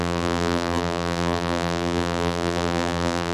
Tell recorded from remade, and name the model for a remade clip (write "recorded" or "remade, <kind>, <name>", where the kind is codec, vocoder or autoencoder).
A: remade, vocoder, BigVGAN v2